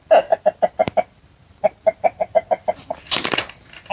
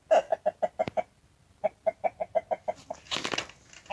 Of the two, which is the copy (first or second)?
first